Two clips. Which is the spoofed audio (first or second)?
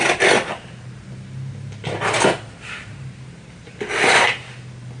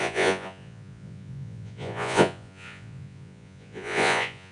second